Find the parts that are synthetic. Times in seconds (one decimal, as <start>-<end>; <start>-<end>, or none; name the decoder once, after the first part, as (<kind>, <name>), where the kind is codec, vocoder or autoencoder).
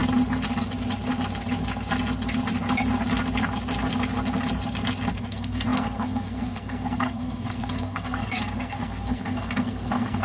5.1-10.2 (codec, SNAC)